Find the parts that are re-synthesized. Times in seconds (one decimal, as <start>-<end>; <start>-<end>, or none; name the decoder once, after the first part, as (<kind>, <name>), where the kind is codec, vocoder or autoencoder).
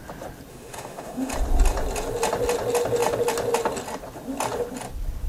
0.5-1.3 (autoencoder, DAC-VAE)